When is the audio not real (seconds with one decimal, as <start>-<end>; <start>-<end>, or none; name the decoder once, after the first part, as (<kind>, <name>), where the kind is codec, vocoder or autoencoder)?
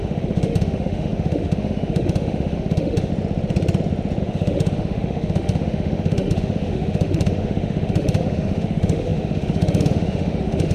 0.0-3.1 (autoencoder, DAC-VAE); 4.2-10.7